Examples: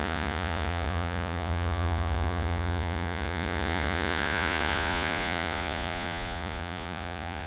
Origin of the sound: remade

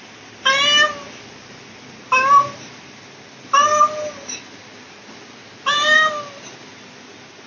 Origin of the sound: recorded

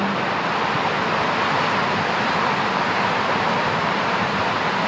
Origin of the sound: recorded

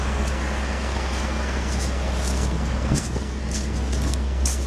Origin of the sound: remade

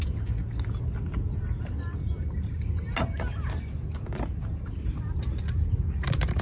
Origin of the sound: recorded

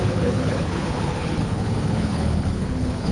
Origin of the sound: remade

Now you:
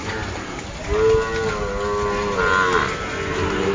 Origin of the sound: recorded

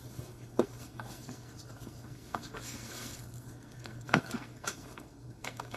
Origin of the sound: remade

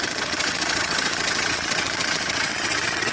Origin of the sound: remade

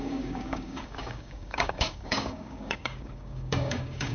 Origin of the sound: remade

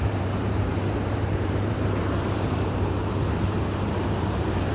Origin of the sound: remade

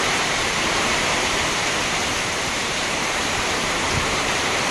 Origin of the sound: remade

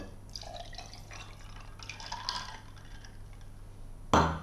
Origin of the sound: recorded